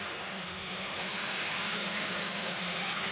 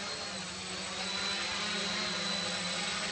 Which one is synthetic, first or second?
first